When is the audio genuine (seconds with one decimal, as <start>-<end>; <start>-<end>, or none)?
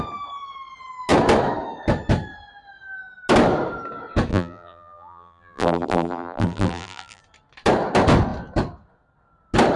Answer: 0.0-4.3; 7.2-9.8